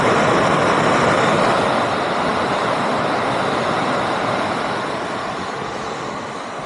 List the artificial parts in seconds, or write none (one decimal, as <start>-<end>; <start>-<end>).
none